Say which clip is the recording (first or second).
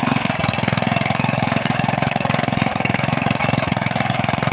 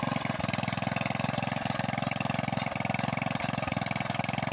second